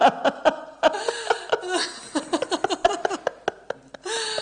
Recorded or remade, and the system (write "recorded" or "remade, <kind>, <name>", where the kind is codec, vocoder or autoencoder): recorded